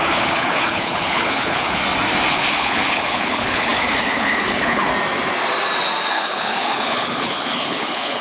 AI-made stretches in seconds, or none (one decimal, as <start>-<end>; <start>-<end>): 0.0-1.8; 2.3-4.9; 6.1-8.2